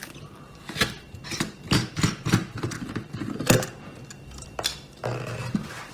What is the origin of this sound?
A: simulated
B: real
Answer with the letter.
B